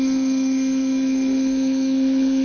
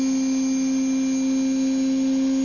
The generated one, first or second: first